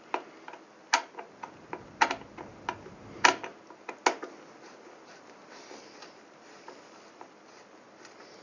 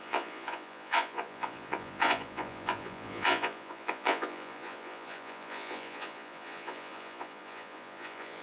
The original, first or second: first